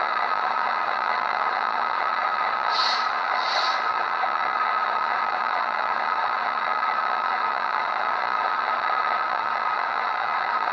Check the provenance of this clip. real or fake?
fake